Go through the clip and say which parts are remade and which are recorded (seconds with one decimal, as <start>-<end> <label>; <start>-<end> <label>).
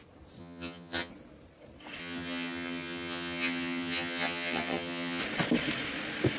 0.0-0.4 recorded; 0.4-1.1 remade; 1.1-2.0 recorded; 2.0-5.2 remade; 5.2-6.4 recorded